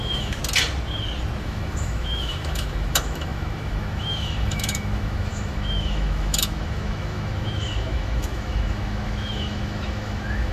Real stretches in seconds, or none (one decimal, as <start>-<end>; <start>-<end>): 0.4-1.4